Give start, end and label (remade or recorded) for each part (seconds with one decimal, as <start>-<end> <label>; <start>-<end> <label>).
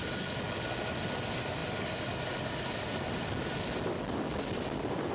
0.0-5.1 recorded